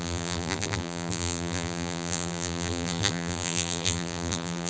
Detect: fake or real fake